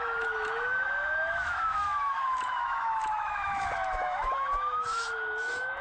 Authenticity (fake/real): fake